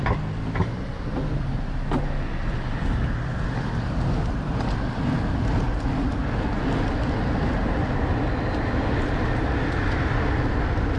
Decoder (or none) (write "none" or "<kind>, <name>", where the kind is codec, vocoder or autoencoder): none